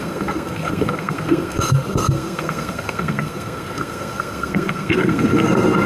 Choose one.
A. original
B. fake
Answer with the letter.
B